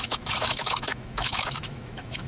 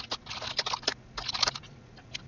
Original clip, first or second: second